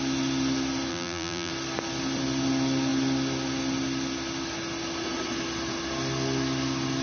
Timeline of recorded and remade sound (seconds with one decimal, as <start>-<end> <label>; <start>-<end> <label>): 0.0-0.9 recorded; 0.9-1.5 remade; 1.5-7.0 recorded